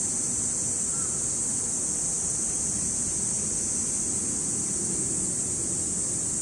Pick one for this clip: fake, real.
real